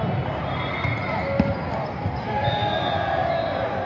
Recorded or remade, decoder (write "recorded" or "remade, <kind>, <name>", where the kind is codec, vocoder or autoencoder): recorded